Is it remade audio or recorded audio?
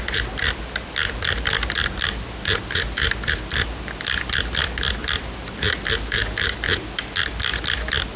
recorded